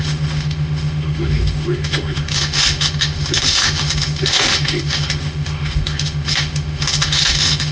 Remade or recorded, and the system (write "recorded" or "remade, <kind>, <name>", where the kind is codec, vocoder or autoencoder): remade, autoencoder, DAC-VAE